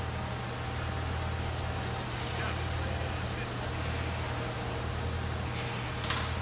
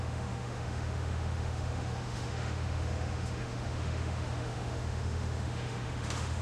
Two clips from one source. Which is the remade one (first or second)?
second